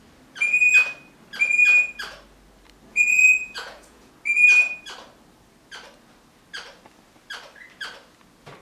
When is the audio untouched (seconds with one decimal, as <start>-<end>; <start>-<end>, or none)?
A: 0.0-2.9; 4.1-8.6